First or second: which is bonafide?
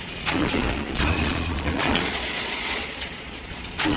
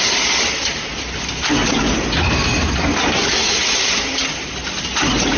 second